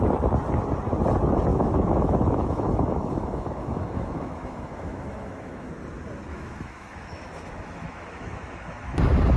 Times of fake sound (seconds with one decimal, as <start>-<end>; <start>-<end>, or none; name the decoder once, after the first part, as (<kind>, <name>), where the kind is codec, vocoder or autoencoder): 1.5-5.7 (autoencoder, DAC-VAE); 6.3-9.0